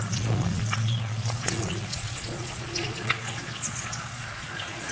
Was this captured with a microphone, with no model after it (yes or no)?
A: no